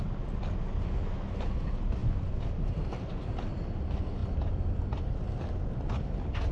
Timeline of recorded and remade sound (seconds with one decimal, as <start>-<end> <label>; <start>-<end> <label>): 0.0-6.5 recorded